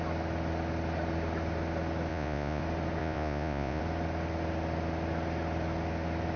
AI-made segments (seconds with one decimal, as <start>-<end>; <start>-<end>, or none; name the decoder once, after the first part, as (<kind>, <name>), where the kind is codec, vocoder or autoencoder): 2.1-2.6 (vocoder, Vocos); 3.0-3.8